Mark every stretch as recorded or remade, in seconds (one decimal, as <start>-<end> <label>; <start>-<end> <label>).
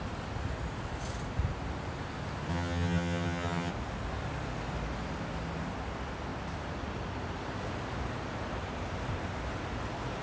0.0-2.5 recorded; 2.5-3.7 remade; 3.7-10.2 recorded